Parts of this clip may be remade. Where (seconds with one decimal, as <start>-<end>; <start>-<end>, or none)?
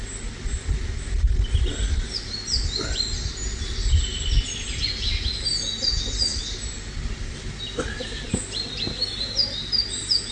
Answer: none